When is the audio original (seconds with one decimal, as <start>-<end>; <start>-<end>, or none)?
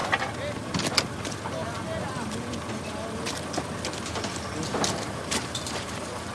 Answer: 0.0-4.7